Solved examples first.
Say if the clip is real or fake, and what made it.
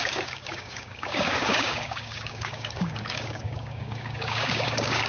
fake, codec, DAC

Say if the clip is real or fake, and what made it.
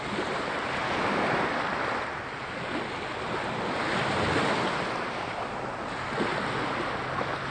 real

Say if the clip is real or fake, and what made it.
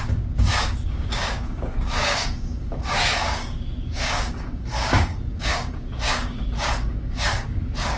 fake, codec, DAC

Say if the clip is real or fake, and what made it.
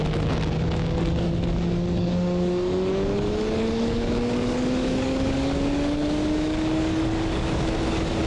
fake, codec, DAC